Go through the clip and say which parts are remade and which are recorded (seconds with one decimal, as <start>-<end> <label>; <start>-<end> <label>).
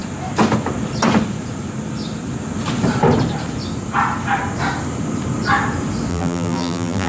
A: 0.0-6.1 recorded; 6.1-7.1 remade